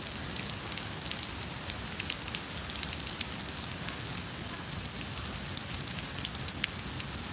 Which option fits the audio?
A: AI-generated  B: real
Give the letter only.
B